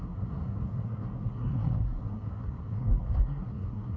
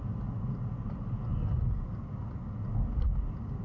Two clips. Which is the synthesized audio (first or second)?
first